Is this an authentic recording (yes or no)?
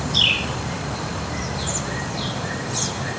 no